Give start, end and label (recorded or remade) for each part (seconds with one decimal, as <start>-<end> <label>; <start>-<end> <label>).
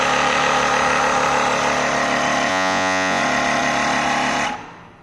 0.0-2.5 recorded; 2.5-3.2 remade; 3.2-5.0 recorded